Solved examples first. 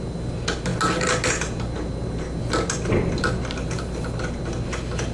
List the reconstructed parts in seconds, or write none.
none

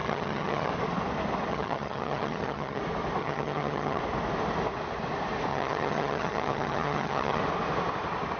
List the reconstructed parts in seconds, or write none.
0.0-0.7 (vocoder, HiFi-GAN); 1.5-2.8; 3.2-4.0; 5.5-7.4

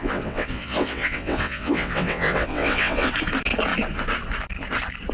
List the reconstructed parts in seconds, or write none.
0.0-3.1 (vocoder, WaveNeXt)